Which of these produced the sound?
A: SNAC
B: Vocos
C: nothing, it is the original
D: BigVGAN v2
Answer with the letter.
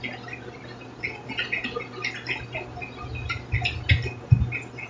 C